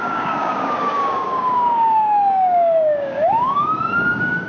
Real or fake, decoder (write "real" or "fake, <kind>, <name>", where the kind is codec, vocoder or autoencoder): fake, codec, DAC